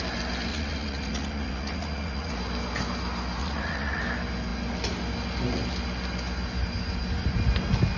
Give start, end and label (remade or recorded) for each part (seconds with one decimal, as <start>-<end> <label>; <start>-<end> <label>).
0.0-0.5 recorded; 0.5-2.4 remade; 2.4-3.4 recorded; 3.4-4.0 remade; 4.0-8.0 recorded